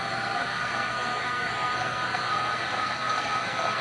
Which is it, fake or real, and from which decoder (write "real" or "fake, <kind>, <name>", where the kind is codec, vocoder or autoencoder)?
fake, codec, SNAC